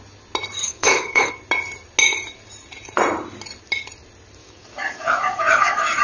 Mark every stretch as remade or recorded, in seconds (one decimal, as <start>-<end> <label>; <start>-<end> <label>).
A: 0.0-0.6 recorded; 0.6-1.3 remade; 1.3-4.4 recorded; 4.4-6.0 remade